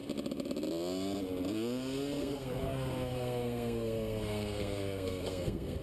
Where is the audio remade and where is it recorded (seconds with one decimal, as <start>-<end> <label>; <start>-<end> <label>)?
0.0-2.2 recorded; 2.2-5.8 remade

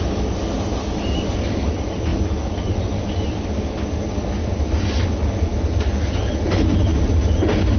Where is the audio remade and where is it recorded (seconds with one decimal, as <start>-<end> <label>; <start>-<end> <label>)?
0.0-7.8 recorded